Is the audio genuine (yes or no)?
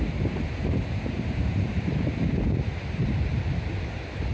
no